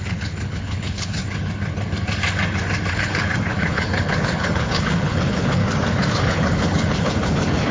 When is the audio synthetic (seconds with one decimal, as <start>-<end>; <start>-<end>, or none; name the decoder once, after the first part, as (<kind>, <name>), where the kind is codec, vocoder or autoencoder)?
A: 0.0-1.2 (codec, HILCodec); 2.9-5.6; 6.1-7.7